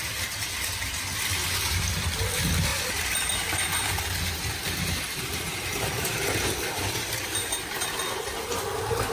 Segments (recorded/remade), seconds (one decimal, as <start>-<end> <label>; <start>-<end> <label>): 0.0-2.7 recorded; 2.7-7.6 remade; 7.6-9.1 recorded